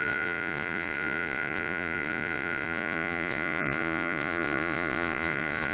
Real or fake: fake